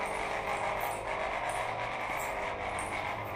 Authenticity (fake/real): real